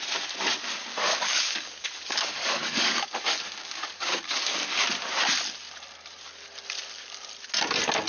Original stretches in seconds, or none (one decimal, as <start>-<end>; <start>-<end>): 0.0-0.9; 4.8-8.1